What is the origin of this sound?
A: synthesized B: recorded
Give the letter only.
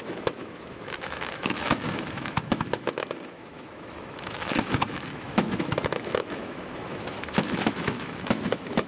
A